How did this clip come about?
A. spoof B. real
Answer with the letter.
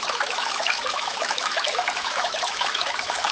A